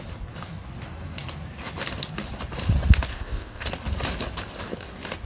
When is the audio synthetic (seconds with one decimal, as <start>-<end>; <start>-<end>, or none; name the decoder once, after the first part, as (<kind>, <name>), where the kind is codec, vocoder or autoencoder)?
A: 3.1-3.7 (codec, ZipCodec)